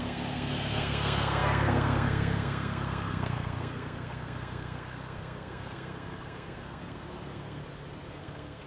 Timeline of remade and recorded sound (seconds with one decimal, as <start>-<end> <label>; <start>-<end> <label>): 0.0-7.6 remade; 7.6-8.1 recorded; 8.1-8.7 remade